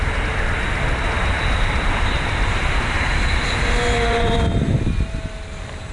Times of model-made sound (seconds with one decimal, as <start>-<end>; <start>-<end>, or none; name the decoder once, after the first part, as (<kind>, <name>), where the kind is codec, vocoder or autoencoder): 1.2-4.6 (vocoder, BigVGAN v2)